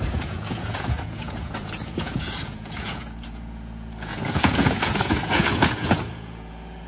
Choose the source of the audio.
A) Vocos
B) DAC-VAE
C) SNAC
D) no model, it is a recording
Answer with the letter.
A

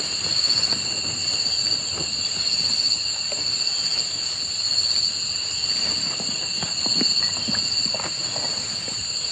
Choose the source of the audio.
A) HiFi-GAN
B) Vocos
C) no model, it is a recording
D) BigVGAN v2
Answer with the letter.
C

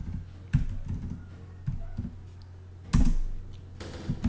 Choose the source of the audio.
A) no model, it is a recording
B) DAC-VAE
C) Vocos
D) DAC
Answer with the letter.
A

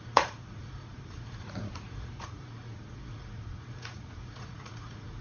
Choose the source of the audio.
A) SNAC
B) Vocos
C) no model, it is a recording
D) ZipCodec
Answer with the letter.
B